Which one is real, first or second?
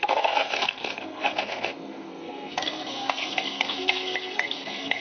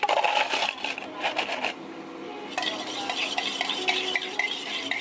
second